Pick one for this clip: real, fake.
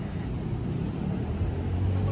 real